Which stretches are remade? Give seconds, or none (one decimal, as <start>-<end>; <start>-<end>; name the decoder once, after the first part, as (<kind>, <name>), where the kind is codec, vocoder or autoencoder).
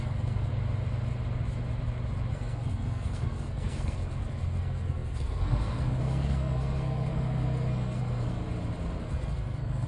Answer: 0.0-0.5 (codec, SNAC); 2.3-8.4; 9.0-9.9